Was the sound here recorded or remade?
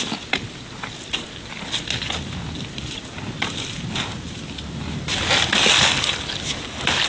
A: recorded